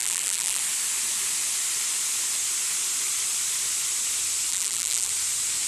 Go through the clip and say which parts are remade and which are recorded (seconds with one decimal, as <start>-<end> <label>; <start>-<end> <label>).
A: 0.0-0.6 remade; 0.6-4.5 recorded; 4.5-5.1 remade; 5.1-5.7 recorded

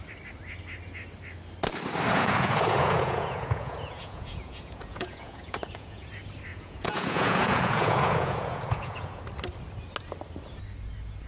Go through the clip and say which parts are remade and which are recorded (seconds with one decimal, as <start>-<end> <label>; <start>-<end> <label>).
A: 0.0-2.1 recorded; 2.1-6.1 remade; 6.1-6.5 recorded; 6.5-9.2 remade; 9.2-11.3 recorded

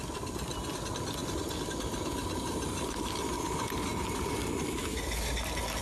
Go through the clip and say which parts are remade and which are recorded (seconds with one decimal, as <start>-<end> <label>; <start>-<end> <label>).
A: 0.0-5.8 recorded

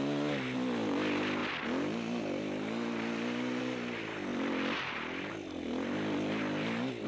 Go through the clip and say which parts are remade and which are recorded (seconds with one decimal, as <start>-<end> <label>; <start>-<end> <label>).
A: 0.0-7.1 recorded